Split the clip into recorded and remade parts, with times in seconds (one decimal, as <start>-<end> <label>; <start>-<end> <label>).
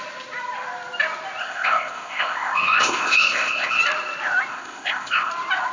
0.0-1.4 recorded; 1.4-3.8 remade; 3.8-4.5 recorded; 4.5-5.3 remade; 5.3-5.7 recorded